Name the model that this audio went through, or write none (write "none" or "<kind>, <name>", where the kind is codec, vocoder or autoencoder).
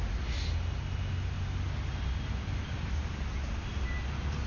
none